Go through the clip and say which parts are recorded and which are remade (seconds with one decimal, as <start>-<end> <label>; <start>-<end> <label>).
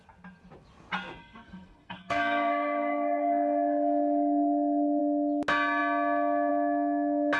0.0-1.2 recorded; 1.2-5.0 remade; 5.0-7.4 recorded